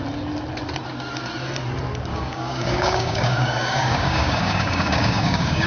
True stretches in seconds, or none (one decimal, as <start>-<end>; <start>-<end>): 0.0-2.1